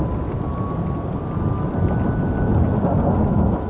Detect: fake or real real